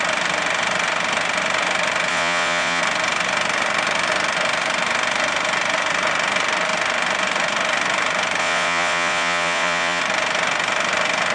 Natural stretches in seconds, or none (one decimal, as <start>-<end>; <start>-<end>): 0.0-2.1; 2.8-8.4; 10.0-11.3